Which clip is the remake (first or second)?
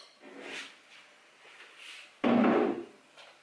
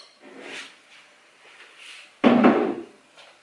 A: second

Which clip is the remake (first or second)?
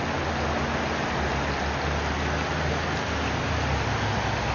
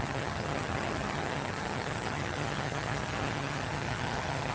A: second